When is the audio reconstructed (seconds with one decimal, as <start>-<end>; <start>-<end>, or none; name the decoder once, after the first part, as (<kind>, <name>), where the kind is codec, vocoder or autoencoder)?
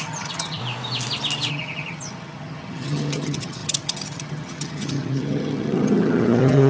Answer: 0.0-0.6 (vocoder, HiFi-GAN); 1.5-6.7